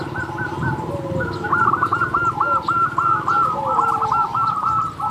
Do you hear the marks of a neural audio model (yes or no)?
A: yes